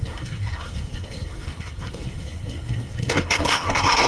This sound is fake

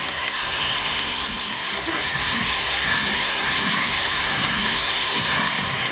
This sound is fake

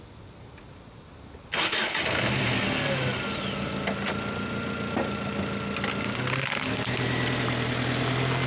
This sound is real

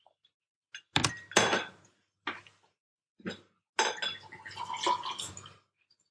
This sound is real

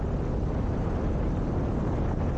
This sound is real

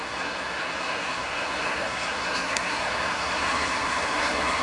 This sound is fake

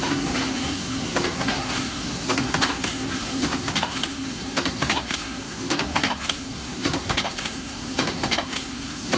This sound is fake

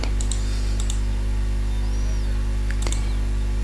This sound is real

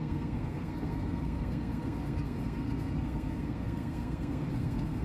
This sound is fake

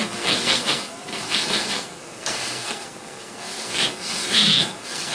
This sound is fake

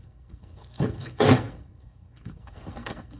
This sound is fake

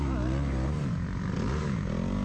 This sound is real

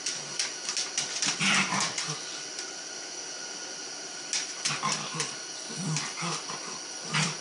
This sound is real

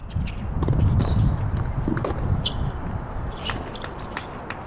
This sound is real